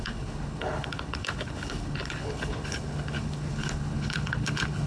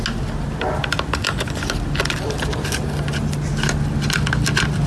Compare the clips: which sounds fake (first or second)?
first